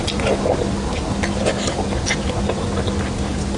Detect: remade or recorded recorded